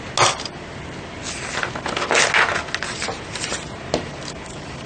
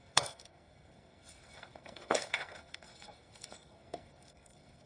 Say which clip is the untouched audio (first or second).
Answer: first